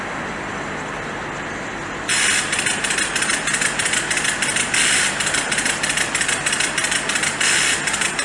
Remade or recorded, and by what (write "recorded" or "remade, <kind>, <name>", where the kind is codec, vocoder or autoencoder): recorded